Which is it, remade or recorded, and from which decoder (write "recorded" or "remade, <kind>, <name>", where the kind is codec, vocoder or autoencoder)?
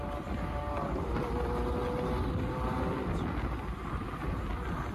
recorded